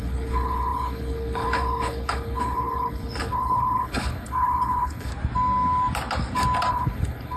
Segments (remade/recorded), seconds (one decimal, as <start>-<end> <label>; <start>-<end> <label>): 0.0-5.1 remade; 5.1-6.7 recorded; 6.7-7.4 remade